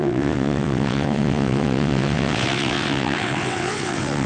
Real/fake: fake